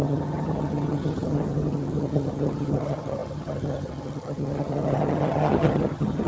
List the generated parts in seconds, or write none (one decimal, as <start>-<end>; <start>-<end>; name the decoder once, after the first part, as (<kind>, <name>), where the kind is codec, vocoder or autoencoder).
0.0-6.3 (vocoder, HiFi-GAN)